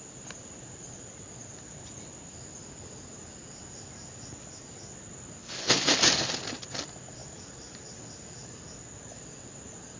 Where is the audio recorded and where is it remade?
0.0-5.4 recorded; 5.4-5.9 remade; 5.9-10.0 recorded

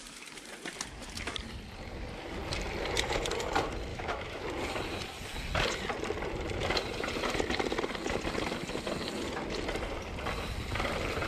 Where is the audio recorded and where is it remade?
0.0-3.9 recorded; 3.9-4.4 remade; 4.4-11.3 recorded

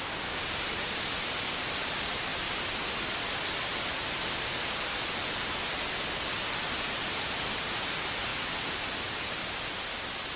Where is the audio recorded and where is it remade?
0.0-10.4 recorded

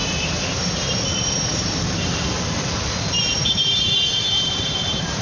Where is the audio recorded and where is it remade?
0.0-5.2 remade

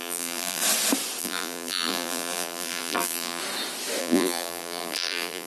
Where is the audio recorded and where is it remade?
0.0-0.6 remade; 0.6-1.2 recorded; 1.2-3.4 remade; 3.4-4.0 recorded; 4.0-5.5 remade

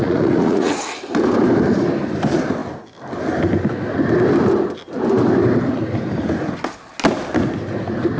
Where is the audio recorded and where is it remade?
0.0-0.8 remade; 0.8-8.2 recorded